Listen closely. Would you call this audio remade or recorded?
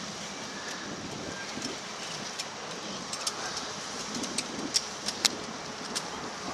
recorded